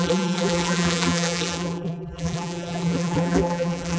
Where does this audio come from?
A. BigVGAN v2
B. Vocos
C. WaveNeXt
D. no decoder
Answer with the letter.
A